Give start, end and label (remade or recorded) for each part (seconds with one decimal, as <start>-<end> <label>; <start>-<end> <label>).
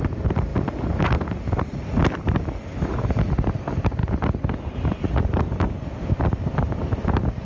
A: 0.0-0.5 remade; 0.5-3.3 recorded; 3.3-4.0 remade; 4.0-5.1 recorded; 5.1-7.5 remade